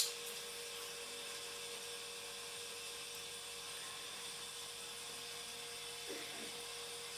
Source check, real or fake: real